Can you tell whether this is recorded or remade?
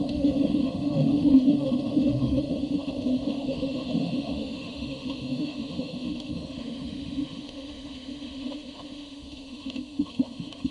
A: remade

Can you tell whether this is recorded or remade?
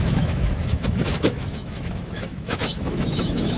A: remade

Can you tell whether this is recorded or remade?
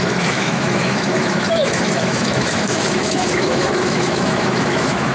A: remade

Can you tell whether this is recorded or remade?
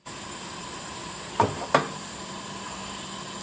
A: recorded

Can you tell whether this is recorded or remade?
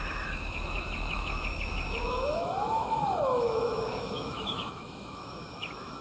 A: remade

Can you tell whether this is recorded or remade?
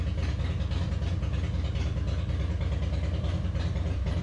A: recorded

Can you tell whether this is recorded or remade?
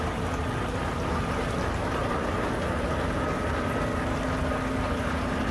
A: recorded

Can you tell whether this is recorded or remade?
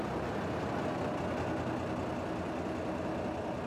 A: recorded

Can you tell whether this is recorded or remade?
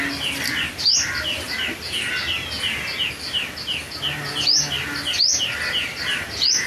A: recorded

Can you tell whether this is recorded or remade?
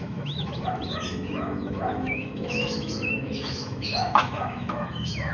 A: remade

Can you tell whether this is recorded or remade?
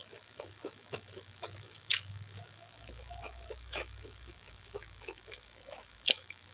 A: remade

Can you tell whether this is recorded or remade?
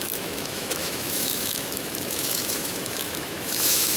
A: remade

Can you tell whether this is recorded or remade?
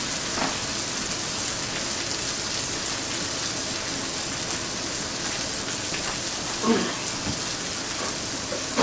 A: recorded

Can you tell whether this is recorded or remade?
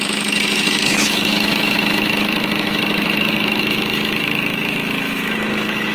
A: remade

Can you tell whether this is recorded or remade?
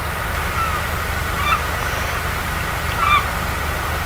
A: recorded